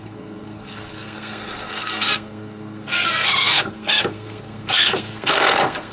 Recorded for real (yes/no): no